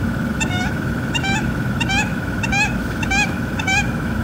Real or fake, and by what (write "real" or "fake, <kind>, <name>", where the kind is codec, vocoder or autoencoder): fake, autoencoder, DAC-VAE